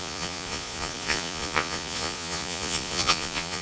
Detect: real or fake fake